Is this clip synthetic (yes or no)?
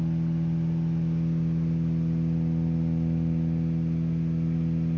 no